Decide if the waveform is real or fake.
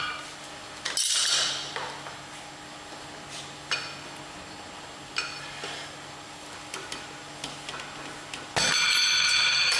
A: real